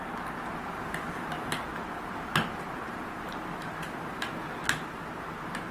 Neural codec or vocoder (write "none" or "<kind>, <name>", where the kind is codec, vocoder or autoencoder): none